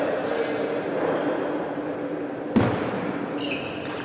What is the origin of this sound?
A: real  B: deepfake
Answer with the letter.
A